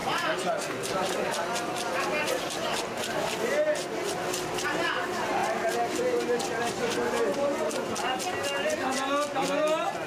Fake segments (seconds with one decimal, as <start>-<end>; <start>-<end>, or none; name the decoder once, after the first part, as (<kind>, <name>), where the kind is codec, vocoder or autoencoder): 0.0-0.5 (vocoder, BigVGAN v2); 7.3-7.9